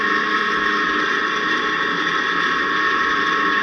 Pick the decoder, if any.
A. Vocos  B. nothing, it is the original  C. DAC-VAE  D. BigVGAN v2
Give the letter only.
B